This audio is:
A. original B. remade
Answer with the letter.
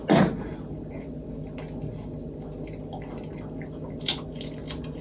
A